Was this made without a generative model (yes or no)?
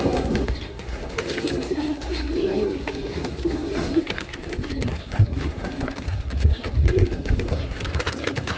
no